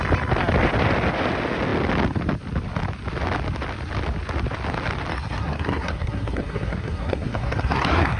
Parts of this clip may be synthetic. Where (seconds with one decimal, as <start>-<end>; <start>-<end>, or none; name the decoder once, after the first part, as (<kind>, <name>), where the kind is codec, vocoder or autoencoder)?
5.1-8.2 (codec, SNAC)